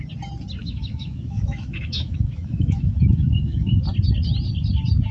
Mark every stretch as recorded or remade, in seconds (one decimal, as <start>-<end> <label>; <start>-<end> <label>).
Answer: 0.0-0.6 recorded; 0.6-3.7 remade; 3.7-5.1 recorded